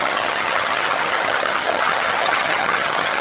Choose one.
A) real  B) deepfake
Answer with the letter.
B